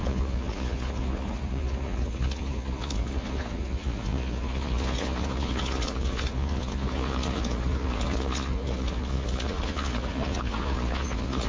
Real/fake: fake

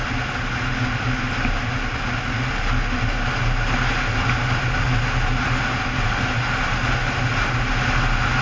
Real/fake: real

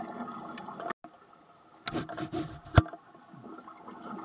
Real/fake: real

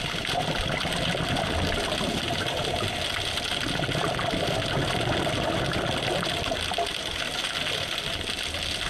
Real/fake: real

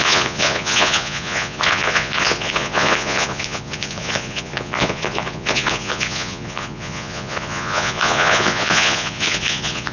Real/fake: fake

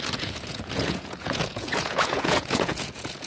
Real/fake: fake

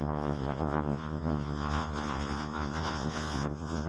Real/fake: fake